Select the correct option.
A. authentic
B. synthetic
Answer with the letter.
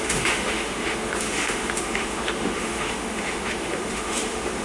B